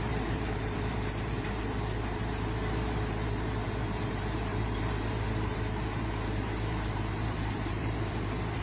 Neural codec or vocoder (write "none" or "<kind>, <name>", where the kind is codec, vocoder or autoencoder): vocoder, BigVGAN v2